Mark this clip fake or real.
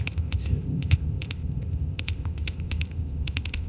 fake